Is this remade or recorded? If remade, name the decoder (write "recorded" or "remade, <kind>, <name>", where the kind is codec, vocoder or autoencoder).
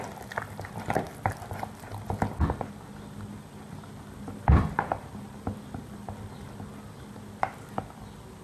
recorded